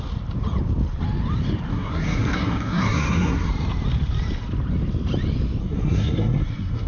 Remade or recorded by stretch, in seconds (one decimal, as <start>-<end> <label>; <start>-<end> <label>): 0.0-1.7 recorded; 1.7-3.5 remade; 3.5-5.6 recorded; 5.6-6.9 remade